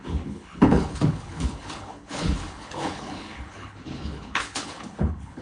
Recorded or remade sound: remade